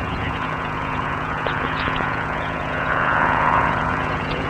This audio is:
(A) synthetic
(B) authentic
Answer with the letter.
A